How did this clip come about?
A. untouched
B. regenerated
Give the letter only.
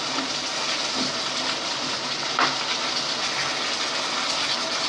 A